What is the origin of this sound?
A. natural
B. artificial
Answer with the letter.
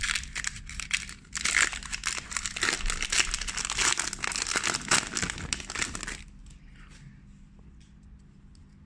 A